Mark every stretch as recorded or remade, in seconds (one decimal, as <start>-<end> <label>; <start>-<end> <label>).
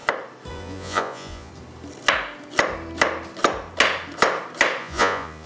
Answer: 0.0-0.5 recorded; 0.5-1.5 remade; 1.5-4.8 recorded; 4.8-5.5 remade